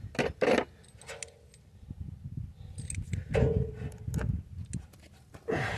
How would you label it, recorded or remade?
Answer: recorded